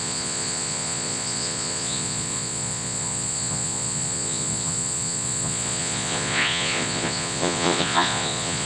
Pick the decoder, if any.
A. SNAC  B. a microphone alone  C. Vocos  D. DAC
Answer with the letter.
C